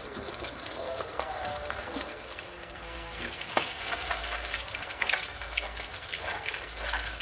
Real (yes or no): no